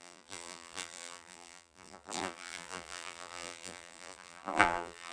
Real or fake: fake